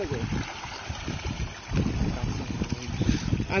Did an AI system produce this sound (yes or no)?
no